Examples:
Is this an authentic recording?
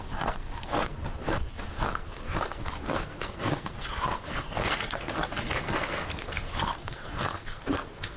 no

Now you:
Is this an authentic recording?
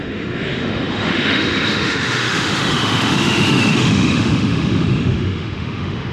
no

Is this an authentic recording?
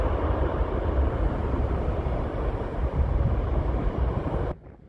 no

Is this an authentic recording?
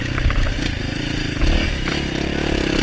yes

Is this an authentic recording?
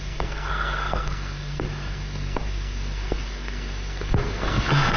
no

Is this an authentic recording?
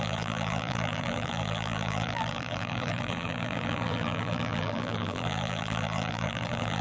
no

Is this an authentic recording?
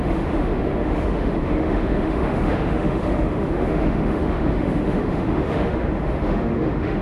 no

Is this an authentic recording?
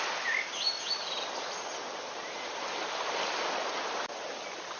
yes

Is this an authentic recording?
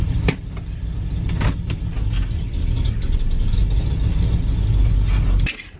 yes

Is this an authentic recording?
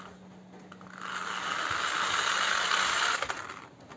yes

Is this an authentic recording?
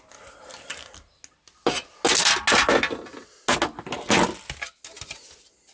yes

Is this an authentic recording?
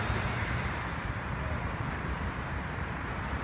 no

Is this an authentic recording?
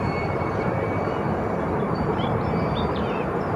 no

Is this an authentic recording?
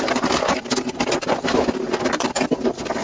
yes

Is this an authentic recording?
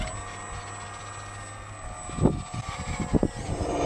yes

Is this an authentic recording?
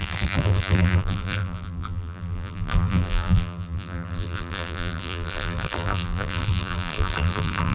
no